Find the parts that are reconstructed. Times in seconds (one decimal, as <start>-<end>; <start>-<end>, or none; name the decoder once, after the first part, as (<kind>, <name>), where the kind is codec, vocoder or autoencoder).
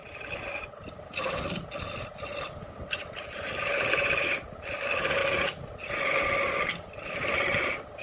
2.0-5.2 (vocoder, BigVGAN v2); 5.9-8.0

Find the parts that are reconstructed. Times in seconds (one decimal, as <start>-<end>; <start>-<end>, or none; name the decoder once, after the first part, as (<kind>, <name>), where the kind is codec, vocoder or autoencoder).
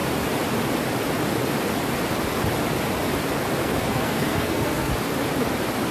3.6-4.9 (codec, SNAC)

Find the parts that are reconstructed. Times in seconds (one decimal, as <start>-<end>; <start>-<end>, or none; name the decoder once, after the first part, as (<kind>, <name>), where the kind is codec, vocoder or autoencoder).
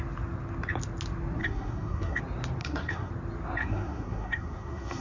1.4-2.2 (codec, SNAC); 2.6-3.1; 3.6-5.0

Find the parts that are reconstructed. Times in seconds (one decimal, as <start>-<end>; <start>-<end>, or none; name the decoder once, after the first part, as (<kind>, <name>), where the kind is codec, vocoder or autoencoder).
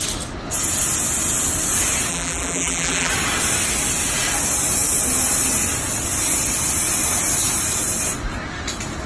2.1-3.1 (vocoder, BigVGAN v2)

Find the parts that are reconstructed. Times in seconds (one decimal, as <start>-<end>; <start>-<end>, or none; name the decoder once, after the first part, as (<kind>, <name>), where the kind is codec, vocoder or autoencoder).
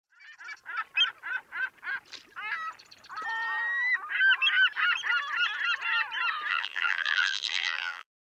6.5-8.4 (vocoder, BigVGAN v2)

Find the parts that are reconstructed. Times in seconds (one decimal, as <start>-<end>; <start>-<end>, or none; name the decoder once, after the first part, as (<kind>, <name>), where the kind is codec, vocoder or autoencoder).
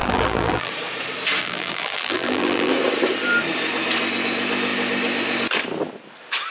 0.0-0.7 (vocoder, BigVGAN v2); 1.4-2.7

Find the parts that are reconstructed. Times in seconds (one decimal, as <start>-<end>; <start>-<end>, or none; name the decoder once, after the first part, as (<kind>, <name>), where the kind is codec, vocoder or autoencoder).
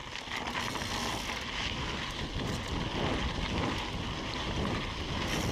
none